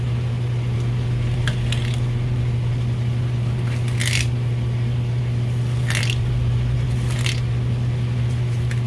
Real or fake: real